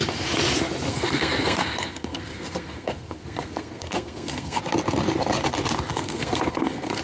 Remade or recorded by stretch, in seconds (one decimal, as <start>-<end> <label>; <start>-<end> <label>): 0.0-0.9 recorded; 0.9-4.6 remade; 4.6-5.9 recorded; 5.9-7.0 remade